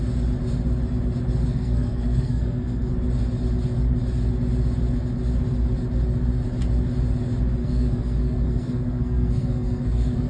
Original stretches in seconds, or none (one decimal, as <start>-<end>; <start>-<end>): 0.0-1.4; 2.9-7.6